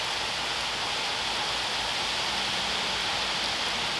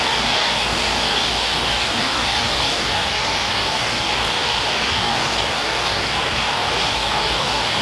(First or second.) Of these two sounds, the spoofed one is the second